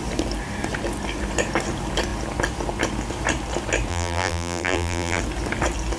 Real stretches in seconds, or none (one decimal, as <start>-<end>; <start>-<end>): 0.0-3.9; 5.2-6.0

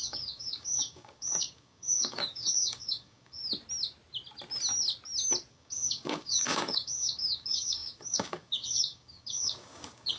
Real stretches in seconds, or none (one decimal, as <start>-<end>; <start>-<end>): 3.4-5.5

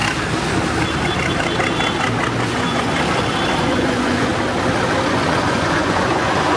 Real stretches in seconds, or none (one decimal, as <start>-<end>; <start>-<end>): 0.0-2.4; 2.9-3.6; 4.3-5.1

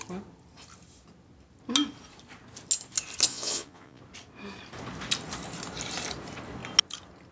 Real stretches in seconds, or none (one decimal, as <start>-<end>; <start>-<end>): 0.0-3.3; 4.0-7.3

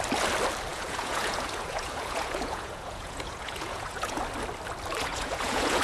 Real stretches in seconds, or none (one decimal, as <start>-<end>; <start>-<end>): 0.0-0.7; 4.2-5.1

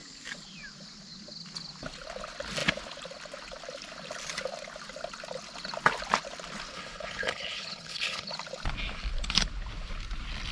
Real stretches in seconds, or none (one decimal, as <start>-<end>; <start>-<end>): 0.0-6.7; 8.3-10.5

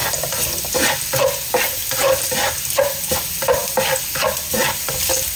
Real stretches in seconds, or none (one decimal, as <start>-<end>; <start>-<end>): 0.0-0.6; 1.8-2.9